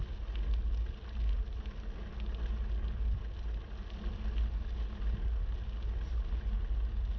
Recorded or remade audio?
recorded